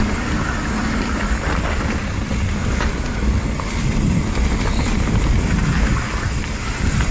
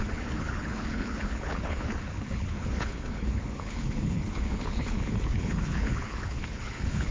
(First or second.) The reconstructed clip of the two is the second